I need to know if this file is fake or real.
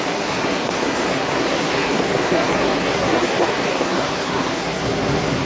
fake